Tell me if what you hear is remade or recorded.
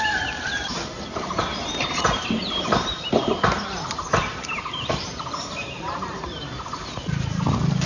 remade